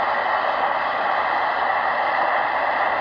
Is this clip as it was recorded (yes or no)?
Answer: no